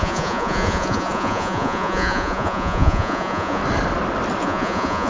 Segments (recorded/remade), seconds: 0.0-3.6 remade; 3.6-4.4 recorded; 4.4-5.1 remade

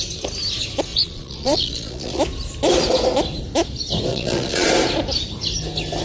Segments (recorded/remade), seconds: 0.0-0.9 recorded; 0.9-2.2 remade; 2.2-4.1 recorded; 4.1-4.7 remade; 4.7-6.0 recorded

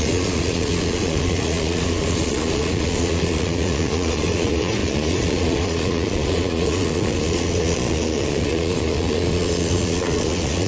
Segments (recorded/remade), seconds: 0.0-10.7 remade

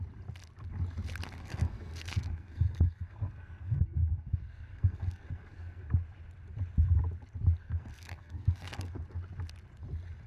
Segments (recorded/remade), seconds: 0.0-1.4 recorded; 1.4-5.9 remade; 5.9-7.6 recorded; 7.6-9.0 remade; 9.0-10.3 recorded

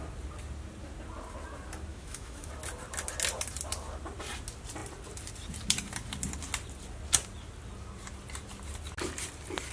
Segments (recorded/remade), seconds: 0.0-1.9 recorded; 1.9-2.5 remade; 2.5-9.7 recorded